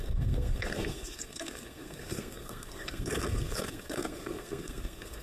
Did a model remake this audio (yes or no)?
yes